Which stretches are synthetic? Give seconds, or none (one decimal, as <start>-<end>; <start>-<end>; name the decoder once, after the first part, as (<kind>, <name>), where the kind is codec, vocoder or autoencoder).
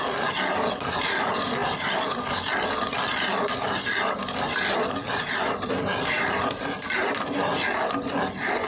none